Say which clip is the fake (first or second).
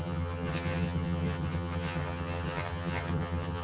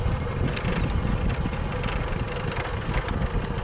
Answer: first